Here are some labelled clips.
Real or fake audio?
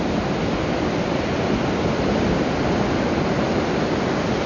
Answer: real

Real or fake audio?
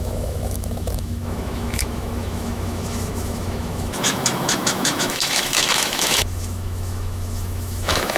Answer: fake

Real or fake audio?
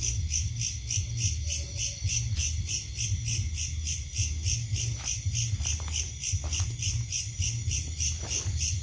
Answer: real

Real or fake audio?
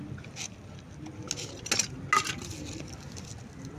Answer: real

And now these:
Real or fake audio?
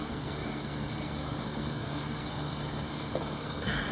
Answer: fake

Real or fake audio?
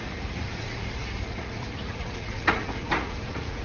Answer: fake